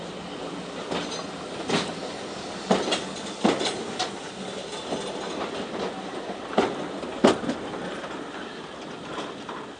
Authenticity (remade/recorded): recorded